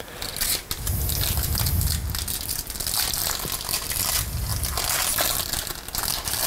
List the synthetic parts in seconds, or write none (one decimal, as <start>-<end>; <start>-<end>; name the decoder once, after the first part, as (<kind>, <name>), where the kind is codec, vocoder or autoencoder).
none